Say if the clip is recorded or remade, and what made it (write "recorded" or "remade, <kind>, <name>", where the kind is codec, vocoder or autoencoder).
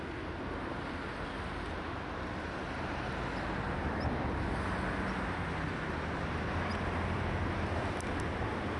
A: recorded